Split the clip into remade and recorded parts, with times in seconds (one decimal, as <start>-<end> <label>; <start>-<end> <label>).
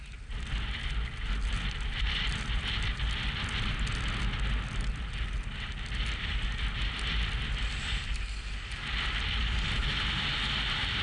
0.0-11.0 recorded